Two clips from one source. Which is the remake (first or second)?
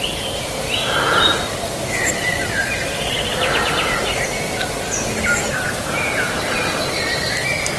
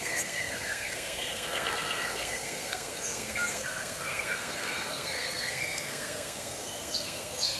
second